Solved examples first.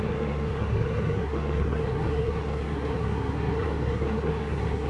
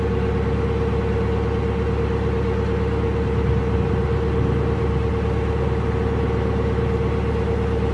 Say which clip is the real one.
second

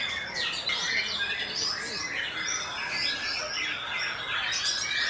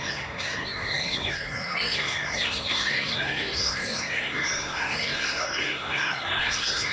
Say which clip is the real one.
first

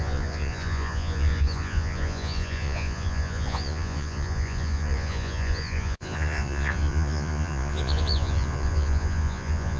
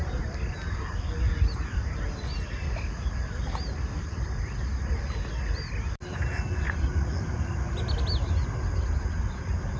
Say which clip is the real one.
second